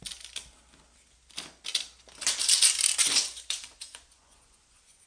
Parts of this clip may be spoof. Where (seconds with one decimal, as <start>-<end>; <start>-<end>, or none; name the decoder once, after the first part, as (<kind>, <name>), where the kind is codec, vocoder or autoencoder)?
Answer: 3.0-5.1 (vocoder, Vocos)